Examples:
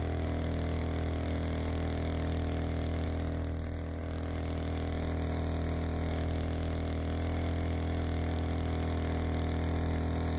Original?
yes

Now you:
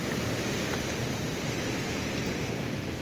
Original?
yes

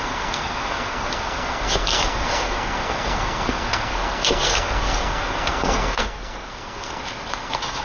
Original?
no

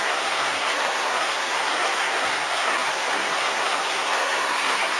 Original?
no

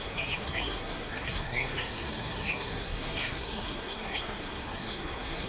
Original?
no